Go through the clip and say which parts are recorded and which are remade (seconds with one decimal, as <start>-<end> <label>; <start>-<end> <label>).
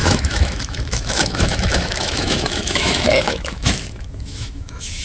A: 0.0-5.0 remade